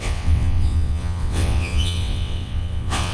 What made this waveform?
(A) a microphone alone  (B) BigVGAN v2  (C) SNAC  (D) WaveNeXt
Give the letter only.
D